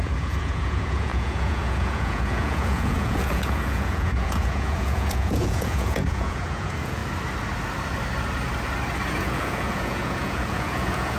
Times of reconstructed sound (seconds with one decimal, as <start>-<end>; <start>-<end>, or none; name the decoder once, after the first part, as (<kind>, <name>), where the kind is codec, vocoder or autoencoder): 0.0-7.0 (vocoder, Vocos); 9.1-11.2